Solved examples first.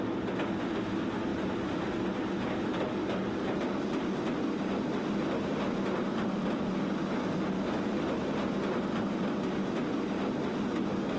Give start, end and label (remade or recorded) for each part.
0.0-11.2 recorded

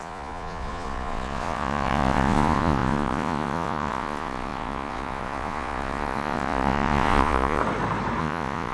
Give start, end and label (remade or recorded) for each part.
0.0-7.6 remade; 7.6-8.2 recorded; 8.2-8.7 remade

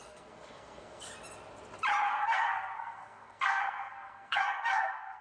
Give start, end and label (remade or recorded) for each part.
0.0-1.1 remade; 1.1-2.1 recorded; 2.1-5.2 remade

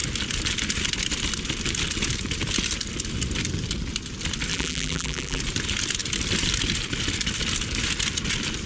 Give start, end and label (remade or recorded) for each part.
0.0-4.5 recorded; 4.5-5.4 remade; 5.4-8.7 recorded

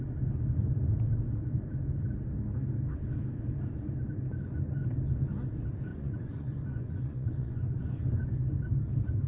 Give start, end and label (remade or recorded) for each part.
0.0-5.9 recorded; 5.9-8.1 remade; 8.1-9.3 recorded

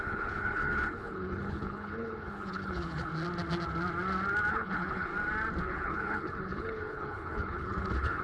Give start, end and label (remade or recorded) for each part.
0.0-3.1 remade; 3.1-4.5 recorded; 4.5-5.1 remade; 5.1-5.6 recorded; 5.6-8.2 remade

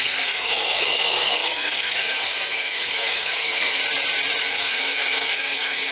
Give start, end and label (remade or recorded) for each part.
0.0-3.8 remade; 3.8-4.4 recorded; 4.4-5.9 remade

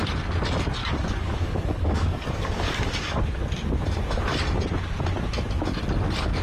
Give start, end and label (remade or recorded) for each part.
0.0-0.8 recorded; 0.8-3.2 remade; 3.2-6.4 recorded